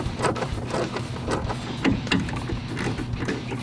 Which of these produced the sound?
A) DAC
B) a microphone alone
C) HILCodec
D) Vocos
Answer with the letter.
B